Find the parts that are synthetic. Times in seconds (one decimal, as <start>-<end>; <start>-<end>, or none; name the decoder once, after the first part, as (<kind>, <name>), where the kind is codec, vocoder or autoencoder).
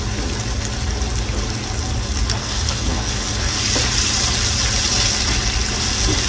2.4-3.2 (codec, SNAC)